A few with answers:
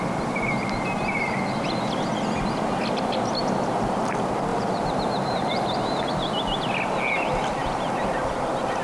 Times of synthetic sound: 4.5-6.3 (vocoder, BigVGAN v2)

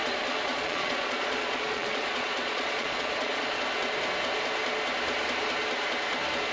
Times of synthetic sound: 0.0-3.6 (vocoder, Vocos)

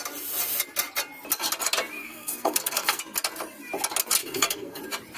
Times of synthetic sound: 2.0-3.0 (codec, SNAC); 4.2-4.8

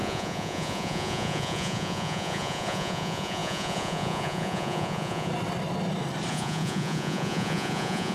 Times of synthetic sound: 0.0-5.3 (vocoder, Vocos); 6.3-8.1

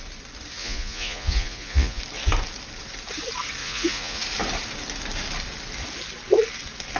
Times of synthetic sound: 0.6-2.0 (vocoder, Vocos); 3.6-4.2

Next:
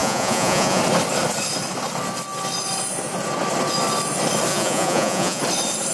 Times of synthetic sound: 0.0-0.8 (vocoder, Vocos); 4.5-5.4